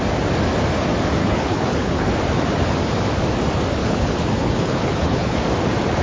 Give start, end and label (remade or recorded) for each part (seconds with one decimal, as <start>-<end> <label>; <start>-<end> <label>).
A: 0.0-1.2 recorded; 1.2-2.1 remade; 2.1-3.8 recorded; 3.8-5.4 remade; 5.4-6.0 recorded